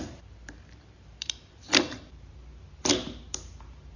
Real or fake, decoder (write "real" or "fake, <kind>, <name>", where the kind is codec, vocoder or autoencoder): fake, vocoder, BigVGAN v2